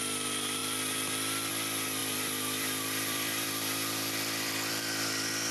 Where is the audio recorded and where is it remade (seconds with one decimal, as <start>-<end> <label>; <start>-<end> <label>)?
0.0-2.0 recorded; 2.0-5.5 remade